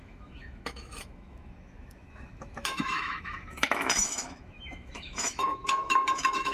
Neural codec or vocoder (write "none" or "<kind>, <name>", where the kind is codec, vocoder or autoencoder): autoencoder, DAC-VAE